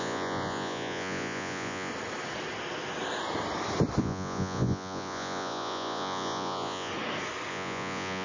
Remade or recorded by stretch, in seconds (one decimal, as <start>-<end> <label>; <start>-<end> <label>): 0.0-1.9 remade; 1.9-4.0 recorded; 4.0-6.9 remade; 6.9-7.5 recorded; 7.5-8.2 remade